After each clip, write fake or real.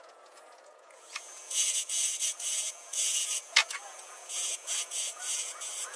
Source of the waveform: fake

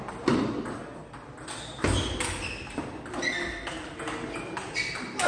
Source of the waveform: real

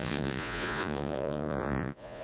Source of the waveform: fake